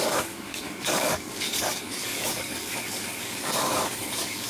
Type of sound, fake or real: fake